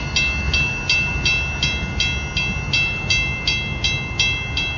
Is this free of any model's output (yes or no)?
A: yes